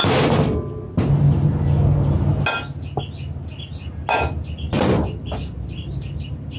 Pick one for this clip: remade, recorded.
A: recorded